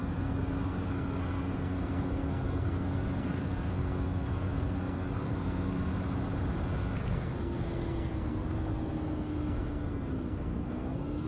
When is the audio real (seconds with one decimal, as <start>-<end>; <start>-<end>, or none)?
5.9-7.1

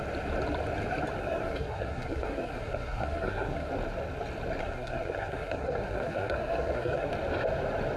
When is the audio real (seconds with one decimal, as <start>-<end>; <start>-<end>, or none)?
0.0-1.2; 3.7-4.6; 7.1-8.0

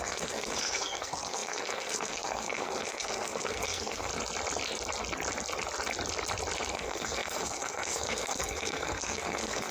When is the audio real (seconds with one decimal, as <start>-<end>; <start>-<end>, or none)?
4.1-6.7

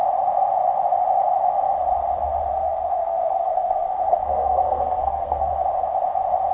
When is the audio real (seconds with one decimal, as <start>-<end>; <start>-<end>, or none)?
0.0-2.5; 5.5-6.5